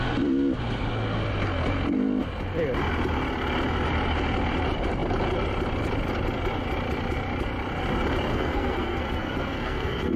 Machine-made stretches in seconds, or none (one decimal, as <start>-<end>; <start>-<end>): 8.3-10.2